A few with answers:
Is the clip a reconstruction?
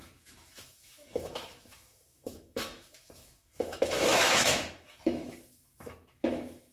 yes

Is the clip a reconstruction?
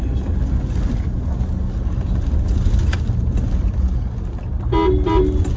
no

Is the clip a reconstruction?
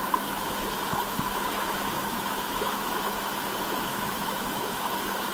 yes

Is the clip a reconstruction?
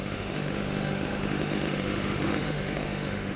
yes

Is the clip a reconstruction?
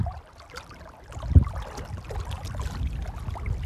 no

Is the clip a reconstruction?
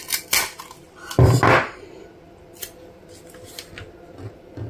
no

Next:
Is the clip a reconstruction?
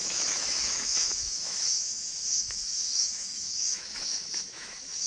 yes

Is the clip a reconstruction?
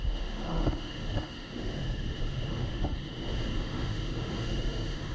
yes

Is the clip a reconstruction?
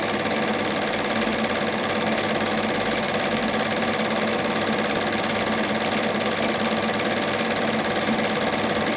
no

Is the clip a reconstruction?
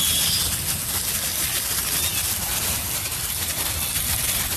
no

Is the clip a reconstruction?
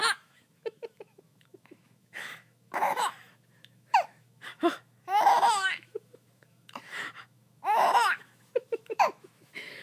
yes